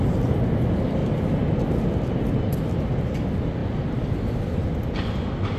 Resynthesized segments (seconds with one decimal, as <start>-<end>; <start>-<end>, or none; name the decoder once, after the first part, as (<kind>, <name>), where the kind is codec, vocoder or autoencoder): none